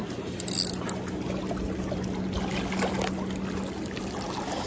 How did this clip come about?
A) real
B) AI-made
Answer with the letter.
A